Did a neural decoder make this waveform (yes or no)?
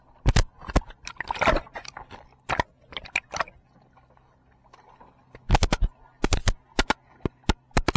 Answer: no